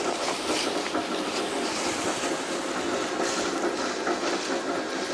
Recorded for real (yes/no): yes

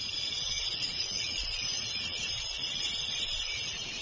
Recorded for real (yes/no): no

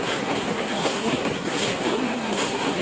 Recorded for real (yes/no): no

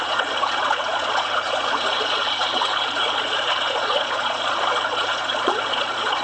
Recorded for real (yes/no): no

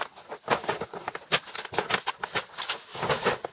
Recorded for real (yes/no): yes